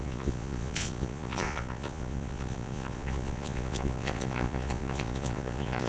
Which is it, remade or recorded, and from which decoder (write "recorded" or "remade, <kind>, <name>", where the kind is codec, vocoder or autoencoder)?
remade, vocoder, Vocos